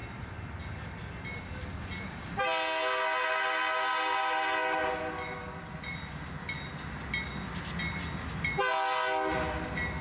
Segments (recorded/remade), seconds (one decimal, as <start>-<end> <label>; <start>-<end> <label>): 0.0-10.0 recorded